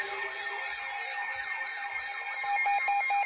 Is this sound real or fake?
real